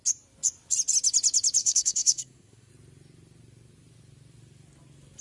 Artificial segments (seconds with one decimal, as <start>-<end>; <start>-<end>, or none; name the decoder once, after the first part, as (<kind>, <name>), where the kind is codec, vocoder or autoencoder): 1.6-2.7 (codec, SNAC)